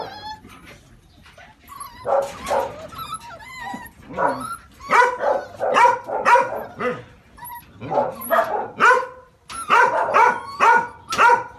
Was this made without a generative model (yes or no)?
yes